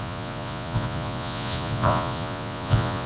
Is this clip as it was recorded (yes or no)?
no